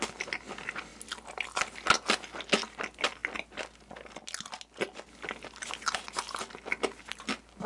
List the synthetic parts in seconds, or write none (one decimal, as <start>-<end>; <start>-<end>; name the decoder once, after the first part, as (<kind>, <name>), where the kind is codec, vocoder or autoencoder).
none